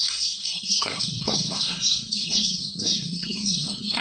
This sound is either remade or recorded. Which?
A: remade